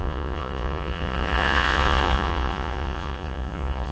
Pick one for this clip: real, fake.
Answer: fake